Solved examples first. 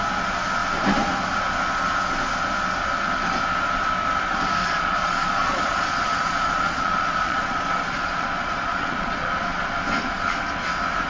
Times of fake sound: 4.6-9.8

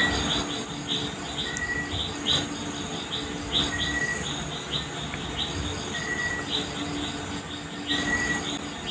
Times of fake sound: none

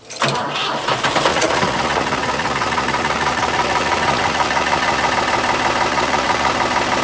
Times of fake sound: 1.3-5.1; 5.9-6.5

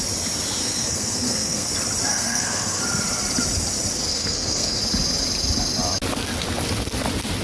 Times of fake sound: 0.6-1.7; 2.1-2.8; 4.1-4.8